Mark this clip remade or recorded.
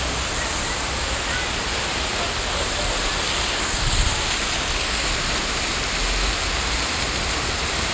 recorded